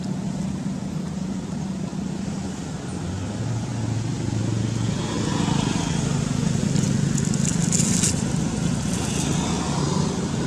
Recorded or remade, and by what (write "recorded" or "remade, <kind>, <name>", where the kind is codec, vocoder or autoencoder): recorded